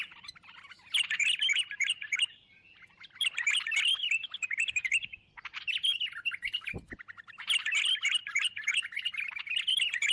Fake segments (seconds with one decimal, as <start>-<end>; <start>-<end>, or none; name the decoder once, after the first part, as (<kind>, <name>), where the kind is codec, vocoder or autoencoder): none